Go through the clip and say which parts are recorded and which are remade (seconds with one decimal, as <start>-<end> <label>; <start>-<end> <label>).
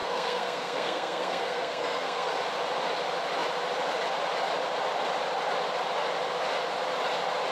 0.0-2.3 remade; 2.3-7.5 recorded